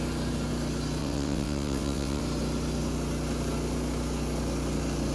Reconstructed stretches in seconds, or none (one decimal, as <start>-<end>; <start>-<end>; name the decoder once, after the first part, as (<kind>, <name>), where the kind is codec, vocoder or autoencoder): 1.0-2.2 (vocoder, WaveNeXt)